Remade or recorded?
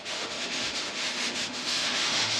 remade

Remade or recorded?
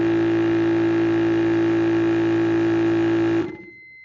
recorded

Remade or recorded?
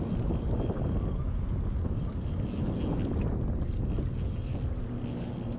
recorded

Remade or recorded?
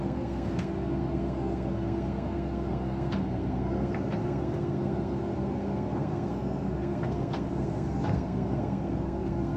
remade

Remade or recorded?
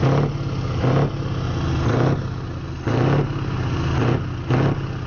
recorded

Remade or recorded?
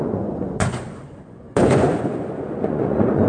remade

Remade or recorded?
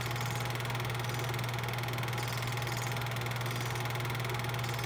recorded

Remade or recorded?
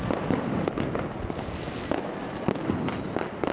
recorded